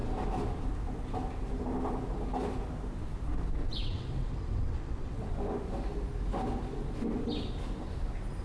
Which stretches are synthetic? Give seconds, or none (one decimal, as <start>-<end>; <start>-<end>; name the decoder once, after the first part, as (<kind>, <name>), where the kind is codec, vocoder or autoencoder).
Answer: 3.6-5.3 (vocoder, WaveNeXt)